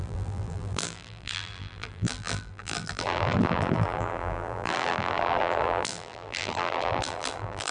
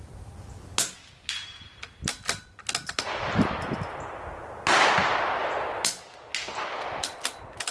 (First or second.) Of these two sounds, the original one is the second